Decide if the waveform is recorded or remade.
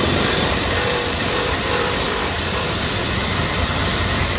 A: remade